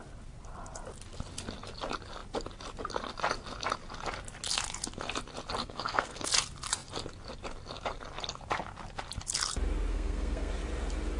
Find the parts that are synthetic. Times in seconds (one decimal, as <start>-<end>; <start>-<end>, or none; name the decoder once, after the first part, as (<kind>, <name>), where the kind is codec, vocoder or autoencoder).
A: 5.6-6.3 (codec, SNAC); 9.9-10.5